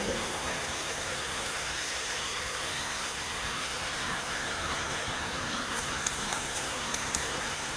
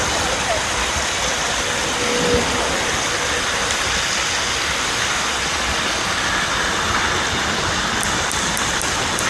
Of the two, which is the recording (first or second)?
second